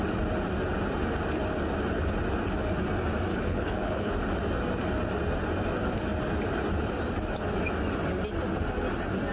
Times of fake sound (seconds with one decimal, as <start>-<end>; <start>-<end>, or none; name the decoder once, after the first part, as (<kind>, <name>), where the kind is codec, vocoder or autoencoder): 3.3-4.1 (codec, HILCodec)